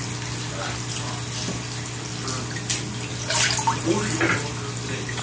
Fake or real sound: real